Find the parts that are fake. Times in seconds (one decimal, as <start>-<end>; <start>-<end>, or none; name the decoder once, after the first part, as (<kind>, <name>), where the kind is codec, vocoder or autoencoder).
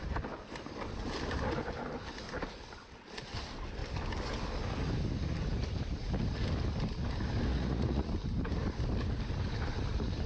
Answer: 7.5-8.1 (vocoder, Vocos)